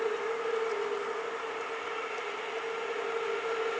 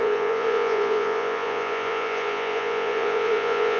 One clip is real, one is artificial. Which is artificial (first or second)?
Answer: second